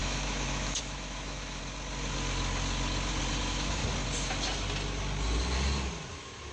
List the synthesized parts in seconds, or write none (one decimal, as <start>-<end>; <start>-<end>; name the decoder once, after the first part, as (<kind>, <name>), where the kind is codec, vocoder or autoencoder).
0.0-1.6 (autoencoder, DAC-VAE); 3.4-3.8; 6.1-6.5